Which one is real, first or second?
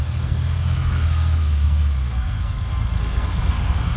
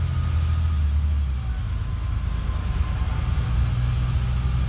second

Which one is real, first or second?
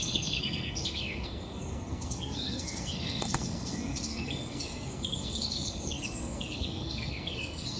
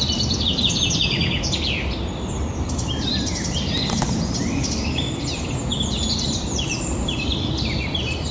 second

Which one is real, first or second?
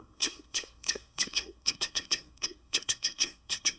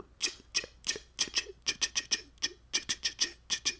second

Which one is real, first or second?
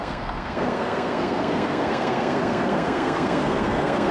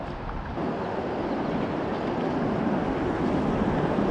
second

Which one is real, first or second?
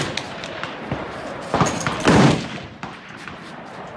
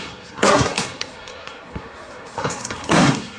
first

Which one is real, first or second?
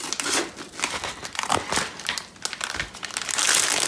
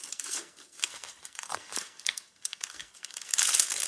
first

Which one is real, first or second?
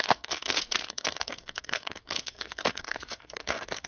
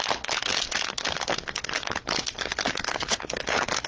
second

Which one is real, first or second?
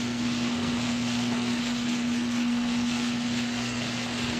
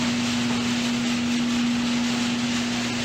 second